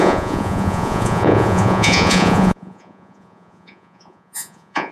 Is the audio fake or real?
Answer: fake